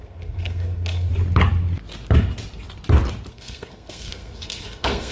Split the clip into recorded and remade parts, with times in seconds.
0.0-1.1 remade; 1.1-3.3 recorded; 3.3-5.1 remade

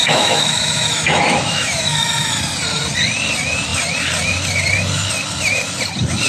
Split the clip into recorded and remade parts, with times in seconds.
0.0-2.4 remade; 2.4-6.3 recorded